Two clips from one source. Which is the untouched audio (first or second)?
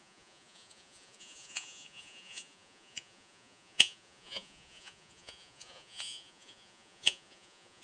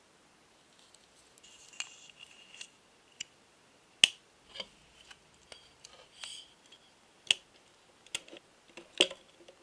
second